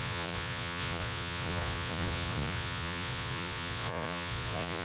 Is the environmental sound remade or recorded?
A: remade